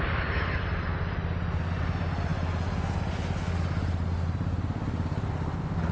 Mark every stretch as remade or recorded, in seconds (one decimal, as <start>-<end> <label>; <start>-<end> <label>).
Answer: 0.0-5.9 recorded